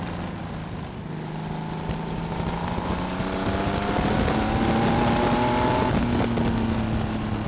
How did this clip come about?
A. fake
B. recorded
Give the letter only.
B